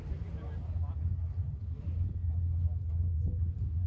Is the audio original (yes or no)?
yes